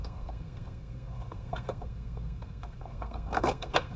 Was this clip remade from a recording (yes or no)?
yes